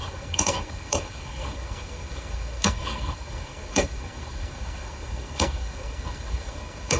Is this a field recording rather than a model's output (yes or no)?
no